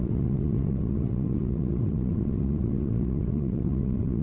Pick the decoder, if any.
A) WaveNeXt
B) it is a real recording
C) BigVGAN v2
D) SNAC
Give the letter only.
A